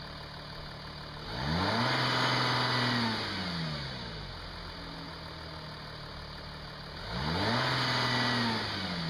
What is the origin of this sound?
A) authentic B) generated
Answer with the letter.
A